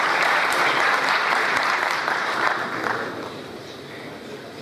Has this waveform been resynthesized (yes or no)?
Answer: yes